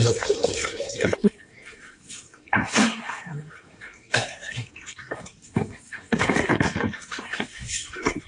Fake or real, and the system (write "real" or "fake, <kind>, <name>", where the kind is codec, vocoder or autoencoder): fake, codec, SNAC